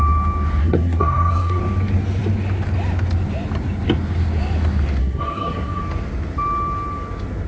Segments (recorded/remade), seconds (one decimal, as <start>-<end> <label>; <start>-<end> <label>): 0.0-0.6 recorded; 0.6-1.6 remade; 1.6-5.0 recorded; 5.0-5.8 remade; 5.8-7.5 recorded